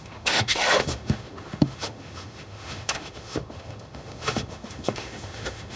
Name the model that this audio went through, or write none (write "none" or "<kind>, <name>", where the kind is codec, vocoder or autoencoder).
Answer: autoencoder, DAC-VAE